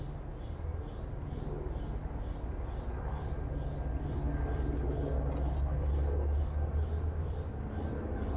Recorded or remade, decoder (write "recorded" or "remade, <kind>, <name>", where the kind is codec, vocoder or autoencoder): recorded